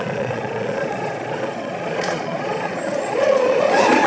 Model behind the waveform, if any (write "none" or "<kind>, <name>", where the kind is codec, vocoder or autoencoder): vocoder, Vocos